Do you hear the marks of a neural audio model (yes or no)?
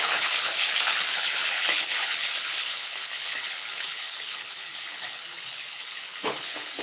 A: yes